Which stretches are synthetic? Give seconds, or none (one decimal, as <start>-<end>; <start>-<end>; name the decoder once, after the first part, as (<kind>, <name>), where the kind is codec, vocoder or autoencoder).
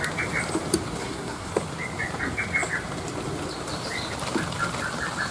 1.0-1.5 (codec, SNAC)